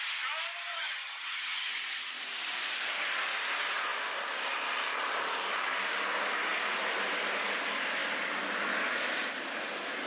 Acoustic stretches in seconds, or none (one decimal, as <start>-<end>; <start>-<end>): 0.0-0.7; 1.7-10.1